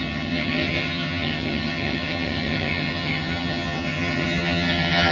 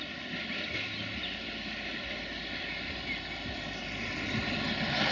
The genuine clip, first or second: second